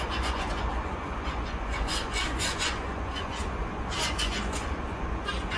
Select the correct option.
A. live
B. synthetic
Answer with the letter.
B